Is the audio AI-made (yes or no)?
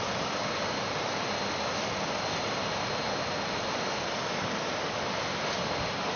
no